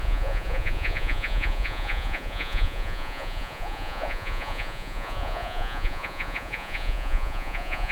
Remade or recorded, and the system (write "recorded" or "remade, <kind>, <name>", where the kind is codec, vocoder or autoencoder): remade, vocoder, Vocos